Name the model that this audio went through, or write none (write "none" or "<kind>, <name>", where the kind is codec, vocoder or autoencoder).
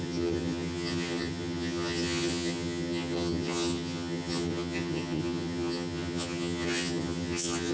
vocoder, HiFi-GAN